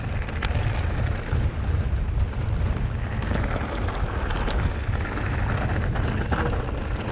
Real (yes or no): yes